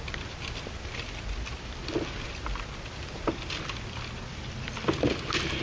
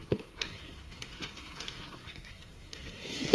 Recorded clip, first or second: first